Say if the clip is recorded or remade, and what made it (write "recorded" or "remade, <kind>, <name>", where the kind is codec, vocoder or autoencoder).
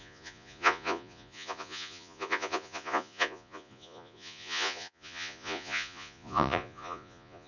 remade, vocoder, Vocos